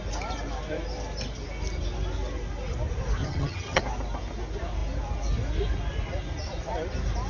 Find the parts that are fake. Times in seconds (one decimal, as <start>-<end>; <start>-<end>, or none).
3.2-3.8